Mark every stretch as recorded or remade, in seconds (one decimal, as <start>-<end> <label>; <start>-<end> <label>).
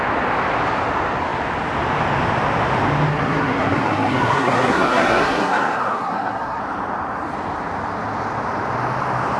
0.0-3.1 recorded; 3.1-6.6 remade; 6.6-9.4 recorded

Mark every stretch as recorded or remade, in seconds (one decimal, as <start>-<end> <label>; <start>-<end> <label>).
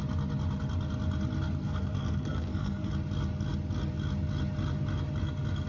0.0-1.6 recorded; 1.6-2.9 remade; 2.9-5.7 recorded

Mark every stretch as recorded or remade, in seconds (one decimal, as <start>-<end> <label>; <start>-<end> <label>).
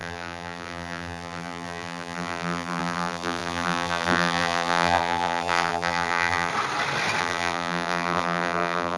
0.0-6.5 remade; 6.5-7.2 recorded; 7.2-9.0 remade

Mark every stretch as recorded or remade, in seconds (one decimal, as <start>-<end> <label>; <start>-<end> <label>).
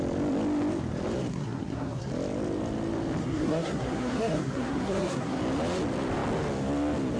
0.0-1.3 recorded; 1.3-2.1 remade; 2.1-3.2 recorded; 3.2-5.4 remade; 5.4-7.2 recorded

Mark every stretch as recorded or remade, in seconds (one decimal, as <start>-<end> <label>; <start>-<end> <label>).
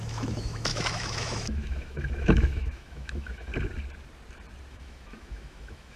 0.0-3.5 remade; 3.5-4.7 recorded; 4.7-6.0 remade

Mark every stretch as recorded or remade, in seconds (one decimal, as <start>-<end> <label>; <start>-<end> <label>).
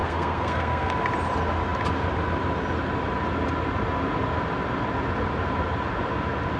0.0-0.9 remade; 0.9-6.6 recorded